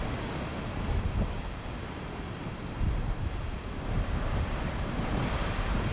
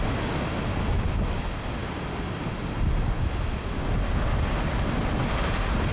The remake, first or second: first